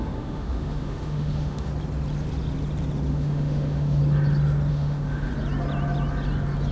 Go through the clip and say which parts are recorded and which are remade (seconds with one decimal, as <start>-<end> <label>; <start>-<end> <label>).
0.0-1.7 remade; 1.7-3.1 recorded; 3.1-4.0 remade; 4.0-4.7 recorded; 4.7-5.3 remade; 5.3-6.7 recorded